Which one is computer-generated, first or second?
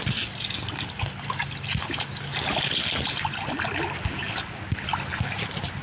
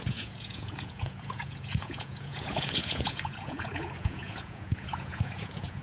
second